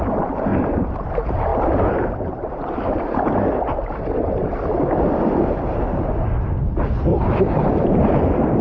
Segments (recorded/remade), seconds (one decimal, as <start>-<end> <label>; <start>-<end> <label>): 0.0-0.5 recorded; 0.5-1.1 remade; 1.1-7.1 recorded; 7.1-8.2 remade; 8.2-8.6 recorded